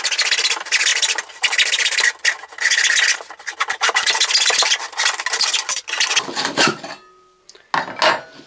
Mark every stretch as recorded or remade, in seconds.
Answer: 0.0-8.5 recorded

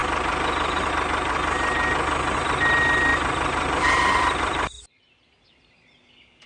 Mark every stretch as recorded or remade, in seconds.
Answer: 0.0-3.1 recorded; 3.1-6.5 remade

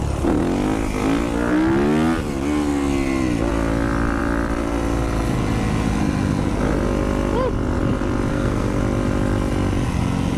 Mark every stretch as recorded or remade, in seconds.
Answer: 0.0-8.3 recorded; 8.3-8.8 remade; 8.8-10.4 recorded

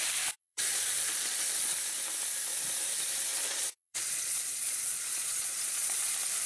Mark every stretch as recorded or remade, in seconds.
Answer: 0.0-0.4 recorded; 0.4-1.8 remade; 1.8-3.3 recorded; 3.3-6.1 remade; 6.1-6.5 recorded

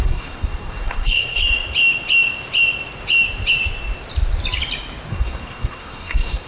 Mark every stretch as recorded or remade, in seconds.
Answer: 0.0-1.4 remade; 1.4-5.1 recorded; 5.1-6.5 remade

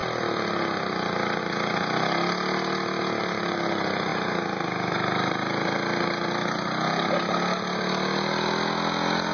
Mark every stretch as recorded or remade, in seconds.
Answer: 0.0-9.3 recorded